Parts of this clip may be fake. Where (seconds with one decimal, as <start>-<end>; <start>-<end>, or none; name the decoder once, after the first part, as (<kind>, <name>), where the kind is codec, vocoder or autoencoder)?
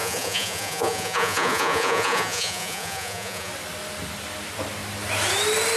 0.0-3.5 (vocoder, Vocos)